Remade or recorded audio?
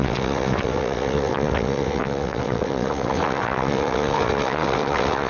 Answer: remade